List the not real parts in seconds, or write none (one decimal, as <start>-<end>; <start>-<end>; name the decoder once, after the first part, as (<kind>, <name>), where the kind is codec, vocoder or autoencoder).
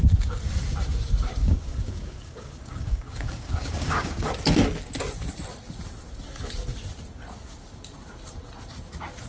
1.4-4.3 (codec, DAC)